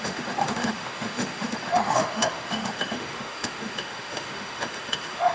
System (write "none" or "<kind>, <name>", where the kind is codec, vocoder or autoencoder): autoencoder, DAC-VAE